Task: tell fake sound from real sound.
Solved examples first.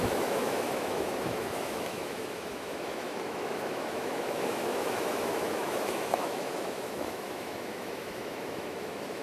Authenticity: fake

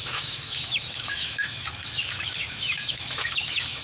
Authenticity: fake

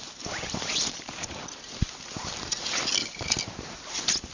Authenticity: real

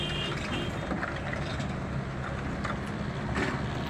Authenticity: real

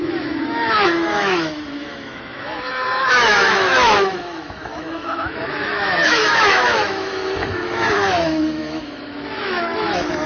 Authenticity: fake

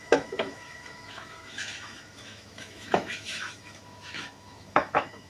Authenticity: fake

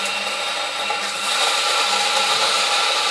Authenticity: real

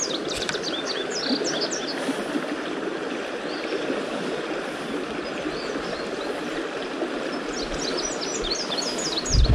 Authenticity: real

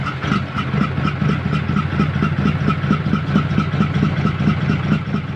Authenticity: real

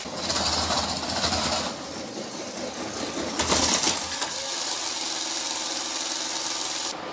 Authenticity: real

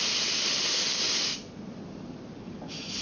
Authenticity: real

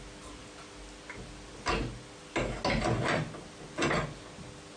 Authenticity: real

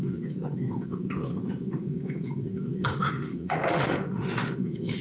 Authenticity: fake